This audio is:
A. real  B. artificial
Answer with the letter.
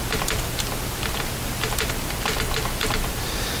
A